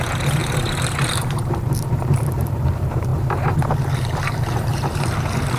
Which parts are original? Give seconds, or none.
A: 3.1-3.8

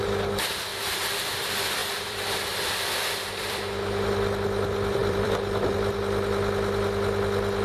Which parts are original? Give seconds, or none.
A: 0.0-1.8; 3.6-5.0; 5.6-7.6

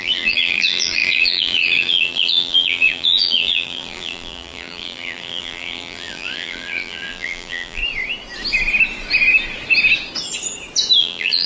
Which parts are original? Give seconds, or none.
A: 7.8-11.0

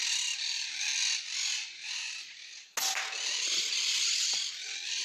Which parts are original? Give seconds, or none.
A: 0.9-3.6

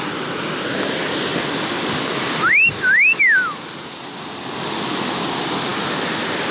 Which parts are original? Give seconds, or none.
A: 0.0-1.3; 3.6-6.5

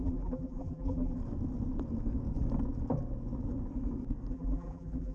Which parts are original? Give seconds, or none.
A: 1.2-4.3